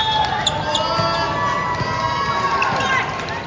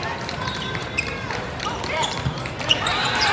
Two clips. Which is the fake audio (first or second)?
second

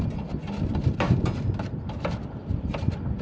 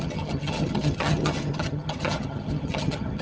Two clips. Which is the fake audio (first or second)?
second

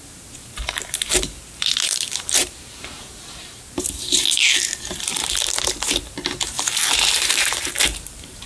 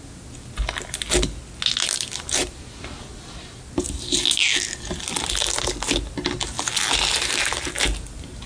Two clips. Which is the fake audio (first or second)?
first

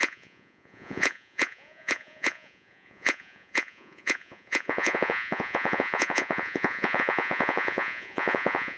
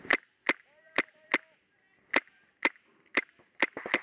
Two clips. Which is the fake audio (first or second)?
first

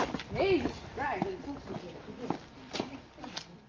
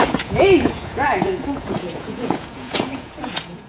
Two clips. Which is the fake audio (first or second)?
second